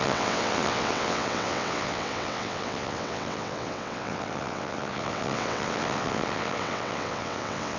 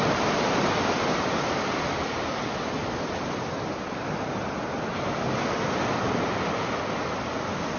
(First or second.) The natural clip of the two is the second